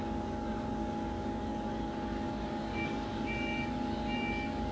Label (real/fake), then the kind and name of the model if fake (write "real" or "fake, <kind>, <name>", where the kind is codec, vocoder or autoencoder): fake, codec, DAC